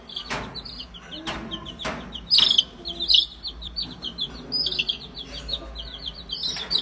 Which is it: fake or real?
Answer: real